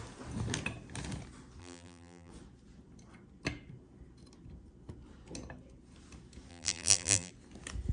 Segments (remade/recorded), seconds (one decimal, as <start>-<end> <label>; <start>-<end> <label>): 0.0-1.6 recorded; 1.6-2.3 remade; 2.3-6.5 recorded; 6.5-7.3 remade; 7.3-7.9 recorded